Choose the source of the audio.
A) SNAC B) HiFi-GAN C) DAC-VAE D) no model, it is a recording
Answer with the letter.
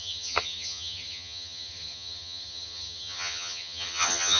B